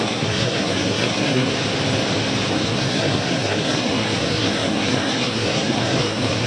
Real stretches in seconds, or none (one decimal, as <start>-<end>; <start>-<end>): 1.5-2.5